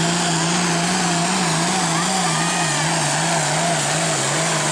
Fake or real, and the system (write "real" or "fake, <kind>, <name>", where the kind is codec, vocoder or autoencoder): real